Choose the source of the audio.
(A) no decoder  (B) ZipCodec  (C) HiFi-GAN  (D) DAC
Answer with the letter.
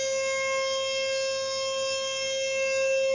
A